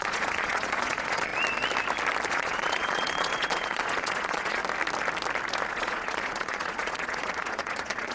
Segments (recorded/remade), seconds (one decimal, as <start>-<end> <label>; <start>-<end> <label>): 0.0-1.3 remade; 1.3-2.3 recorded; 2.3-4.6 remade; 4.6-5.7 recorded; 5.7-8.1 remade